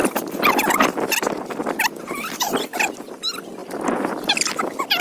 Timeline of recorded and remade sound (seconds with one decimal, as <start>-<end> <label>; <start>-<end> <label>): 0.0-5.0 recorded